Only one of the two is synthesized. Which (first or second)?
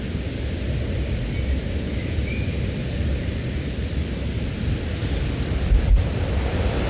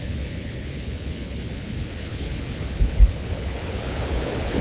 second